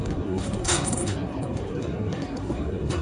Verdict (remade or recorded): remade